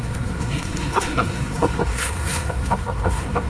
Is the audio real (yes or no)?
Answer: no